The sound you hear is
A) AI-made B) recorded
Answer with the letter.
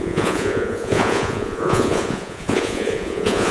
A